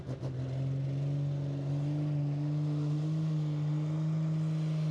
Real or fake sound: real